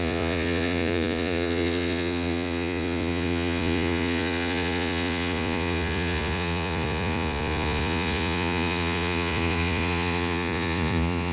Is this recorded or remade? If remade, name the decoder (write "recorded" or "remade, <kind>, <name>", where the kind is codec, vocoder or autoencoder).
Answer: remade, vocoder, Vocos